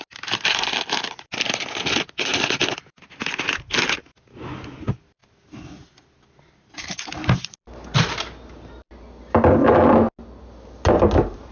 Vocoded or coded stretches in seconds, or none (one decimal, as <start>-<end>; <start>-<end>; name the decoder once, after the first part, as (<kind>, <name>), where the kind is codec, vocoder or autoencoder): none